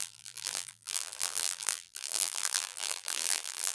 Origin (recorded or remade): remade